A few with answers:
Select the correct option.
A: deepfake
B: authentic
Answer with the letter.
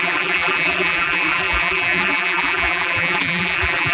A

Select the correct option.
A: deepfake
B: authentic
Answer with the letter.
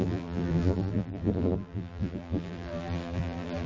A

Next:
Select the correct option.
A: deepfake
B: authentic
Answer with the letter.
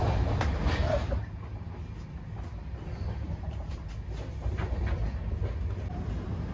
B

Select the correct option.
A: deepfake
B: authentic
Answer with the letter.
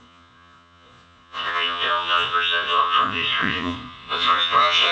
A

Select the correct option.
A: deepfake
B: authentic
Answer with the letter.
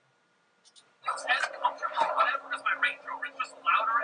B